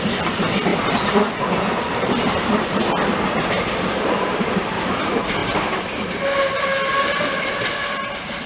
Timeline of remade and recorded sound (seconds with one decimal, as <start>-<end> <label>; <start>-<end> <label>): 0.0-0.7 recorded; 0.7-4.6 remade; 4.6-8.5 recorded